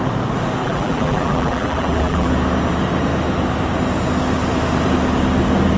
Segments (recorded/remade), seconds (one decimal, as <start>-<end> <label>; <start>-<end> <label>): 0.0-0.6 recorded; 0.6-2.3 remade; 2.3-5.8 recorded